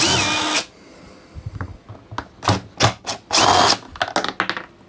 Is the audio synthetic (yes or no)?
no